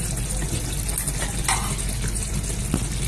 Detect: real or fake real